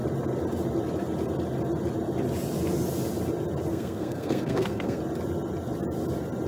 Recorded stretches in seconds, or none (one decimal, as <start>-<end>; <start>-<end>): 0.0-3.7; 5.0-6.5